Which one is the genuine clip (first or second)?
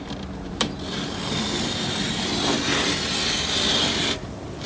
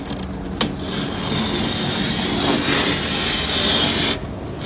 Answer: second